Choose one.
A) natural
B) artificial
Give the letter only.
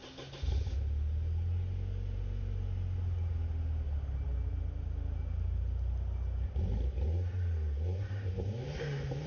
A